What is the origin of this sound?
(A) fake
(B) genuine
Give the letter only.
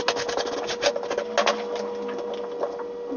B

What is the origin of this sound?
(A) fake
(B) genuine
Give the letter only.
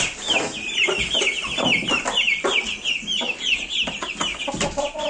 B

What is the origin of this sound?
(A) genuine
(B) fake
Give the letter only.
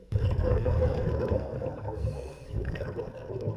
B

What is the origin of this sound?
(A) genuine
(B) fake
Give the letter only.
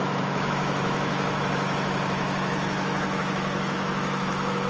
B